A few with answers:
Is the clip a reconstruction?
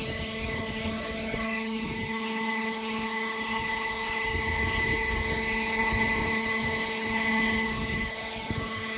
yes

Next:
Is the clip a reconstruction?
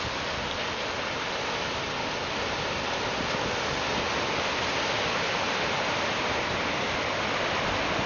no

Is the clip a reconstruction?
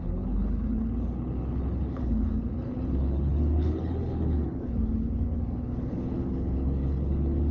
yes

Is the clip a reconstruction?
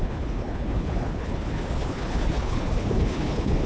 yes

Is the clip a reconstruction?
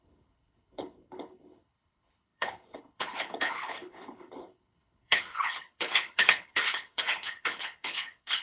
yes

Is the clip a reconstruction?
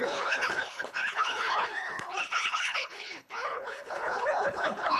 yes